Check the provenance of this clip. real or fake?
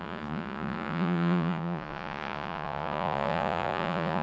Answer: fake